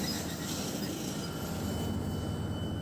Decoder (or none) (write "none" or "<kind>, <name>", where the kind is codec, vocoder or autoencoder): none